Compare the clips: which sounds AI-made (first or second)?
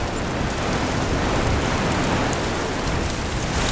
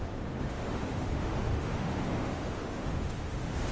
second